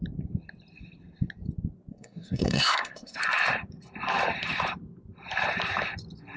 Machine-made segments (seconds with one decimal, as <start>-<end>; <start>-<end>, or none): 1.9-3.2